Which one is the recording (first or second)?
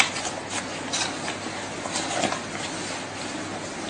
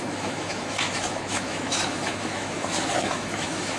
first